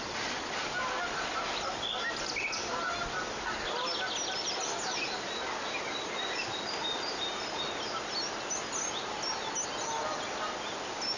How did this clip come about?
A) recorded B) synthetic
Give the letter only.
A